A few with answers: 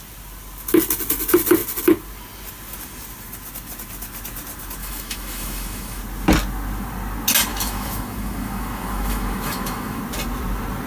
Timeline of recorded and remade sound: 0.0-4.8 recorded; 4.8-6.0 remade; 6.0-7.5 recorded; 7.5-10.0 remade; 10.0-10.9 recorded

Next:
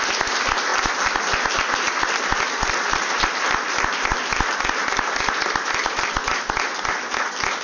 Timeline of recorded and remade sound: 0.0-7.6 recorded

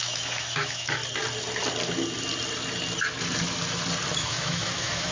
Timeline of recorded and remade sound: 0.0-1.0 remade; 1.0-4.1 recorded; 4.1-5.1 remade

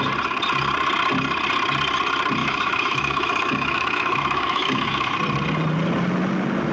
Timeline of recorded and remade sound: 0.0-2.4 recorded; 2.4-5.2 remade; 5.2-6.7 recorded

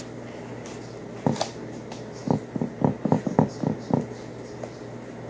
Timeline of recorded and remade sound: 0.0-5.3 recorded